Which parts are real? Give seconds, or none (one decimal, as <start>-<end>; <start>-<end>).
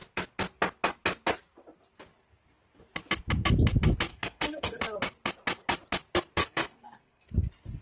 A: 0.0-4.1; 4.8-6.4; 7.2-7.8